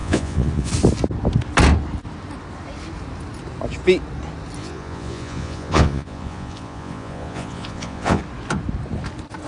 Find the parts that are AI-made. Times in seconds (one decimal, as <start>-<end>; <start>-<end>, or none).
0.0-0.7; 4.6-8.2